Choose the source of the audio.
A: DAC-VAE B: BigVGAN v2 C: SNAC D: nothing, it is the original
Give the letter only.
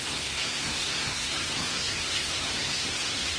C